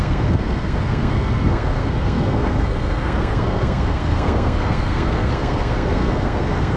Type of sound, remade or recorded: remade